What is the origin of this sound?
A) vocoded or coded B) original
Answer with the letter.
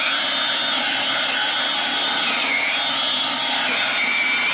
B